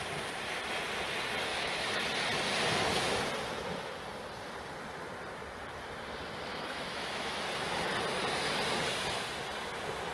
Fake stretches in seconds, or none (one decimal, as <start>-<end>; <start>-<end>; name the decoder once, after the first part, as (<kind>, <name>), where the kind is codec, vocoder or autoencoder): 1.5-2.0 (autoencoder, DAC-VAE); 6.5-7.9